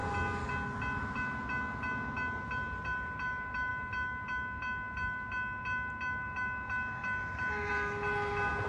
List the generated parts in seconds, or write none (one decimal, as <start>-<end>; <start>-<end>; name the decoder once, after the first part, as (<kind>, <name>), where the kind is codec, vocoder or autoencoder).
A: none